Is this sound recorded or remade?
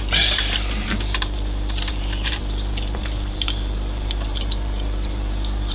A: remade